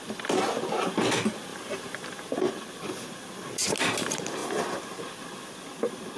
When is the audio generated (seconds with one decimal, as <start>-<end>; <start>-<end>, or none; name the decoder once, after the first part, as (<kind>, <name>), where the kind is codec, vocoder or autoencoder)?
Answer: 1.5-2.5 (vocoder, BigVGAN v2); 4.4-5.0